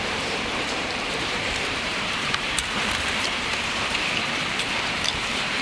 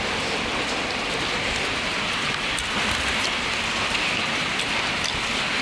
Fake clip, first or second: first